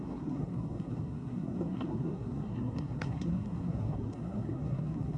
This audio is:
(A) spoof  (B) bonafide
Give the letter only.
A